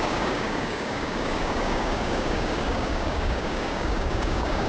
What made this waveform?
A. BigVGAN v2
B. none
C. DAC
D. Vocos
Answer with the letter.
C